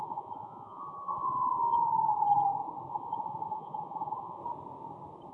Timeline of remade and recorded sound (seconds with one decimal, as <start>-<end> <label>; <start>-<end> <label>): 0.0-1.9 remade; 1.9-2.9 recorded; 2.9-4.4 remade; 4.4-5.3 recorded